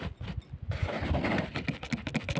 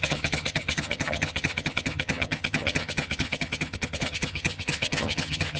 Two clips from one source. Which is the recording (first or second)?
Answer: first